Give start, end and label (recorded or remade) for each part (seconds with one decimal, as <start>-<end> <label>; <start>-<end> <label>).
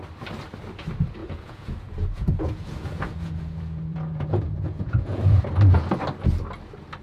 0.0-1.2 recorded; 1.2-5.4 remade; 5.4-7.0 recorded